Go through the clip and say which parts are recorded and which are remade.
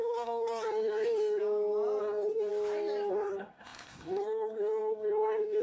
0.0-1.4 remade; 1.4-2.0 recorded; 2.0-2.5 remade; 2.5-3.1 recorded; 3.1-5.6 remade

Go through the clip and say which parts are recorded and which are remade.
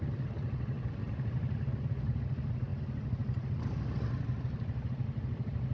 0.0-1.0 recorded; 1.0-2.2 remade; 2.2-5.7 recorded